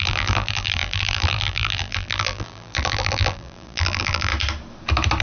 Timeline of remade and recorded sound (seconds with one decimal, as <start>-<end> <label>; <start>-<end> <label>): 0.0-4.3 remade; 4.3-5.2 recorded